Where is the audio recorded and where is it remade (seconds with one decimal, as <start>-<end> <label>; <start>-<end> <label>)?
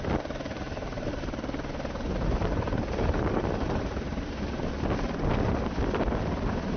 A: 0.0-0.5 recorded; 0.5-4.6 remade; 4.6-6.8 recorded